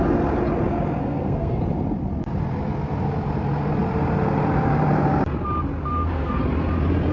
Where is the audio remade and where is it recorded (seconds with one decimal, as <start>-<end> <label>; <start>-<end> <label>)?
0.0-1.0 recorded; 1.0-1.6 remade; 1.6-5.9 recorded; 5.9-6.4 remade; 6.4-7.1 recorded